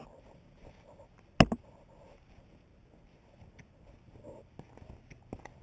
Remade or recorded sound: recorded